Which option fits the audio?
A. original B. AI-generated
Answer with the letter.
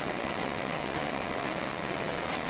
B